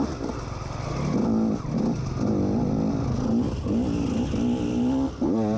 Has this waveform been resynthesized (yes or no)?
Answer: no